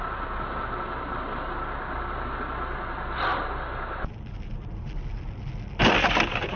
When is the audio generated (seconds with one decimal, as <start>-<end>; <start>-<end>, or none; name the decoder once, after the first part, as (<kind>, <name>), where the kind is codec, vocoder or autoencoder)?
none